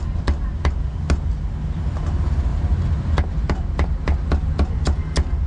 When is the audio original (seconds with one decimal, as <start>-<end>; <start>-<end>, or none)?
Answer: 0.0-2.5; 4.3-5.5